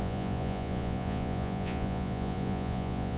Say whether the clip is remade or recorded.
remade